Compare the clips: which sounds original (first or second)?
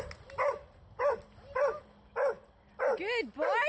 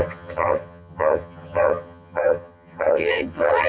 first